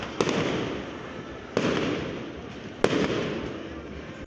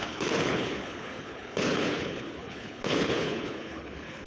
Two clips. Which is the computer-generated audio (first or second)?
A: second